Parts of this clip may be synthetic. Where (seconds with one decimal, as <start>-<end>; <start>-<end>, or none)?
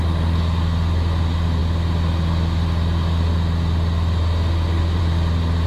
none